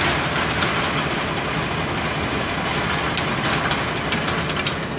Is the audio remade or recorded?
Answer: recorded